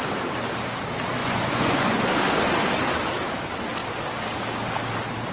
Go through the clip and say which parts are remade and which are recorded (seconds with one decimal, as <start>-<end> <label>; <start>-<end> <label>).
0.0-1.2 recorded; 1.2-2.0 remade; 2.0-5.3 recorded